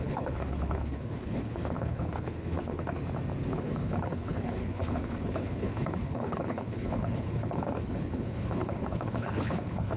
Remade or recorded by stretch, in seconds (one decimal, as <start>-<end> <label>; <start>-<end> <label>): 0.0-3.0 remade; 3.0-3.5 recorded; 3.5-10.0 remade